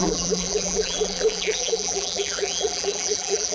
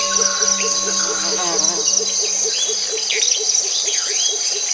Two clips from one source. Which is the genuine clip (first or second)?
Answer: second